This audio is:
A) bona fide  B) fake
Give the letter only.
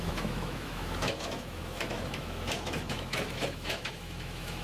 B